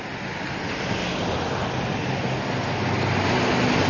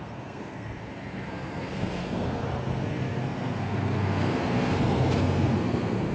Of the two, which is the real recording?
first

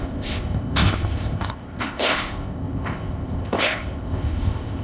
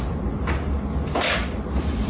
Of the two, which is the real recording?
second